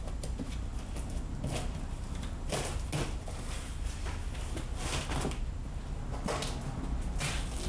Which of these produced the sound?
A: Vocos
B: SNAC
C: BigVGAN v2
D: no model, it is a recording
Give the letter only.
D